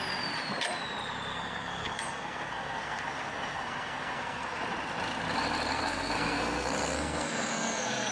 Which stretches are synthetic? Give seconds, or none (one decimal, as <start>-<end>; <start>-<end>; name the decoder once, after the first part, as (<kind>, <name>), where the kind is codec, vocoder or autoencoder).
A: 1.3-4.6 (codec, SNAC); 5.7-8.1